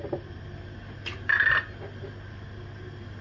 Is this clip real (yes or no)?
yes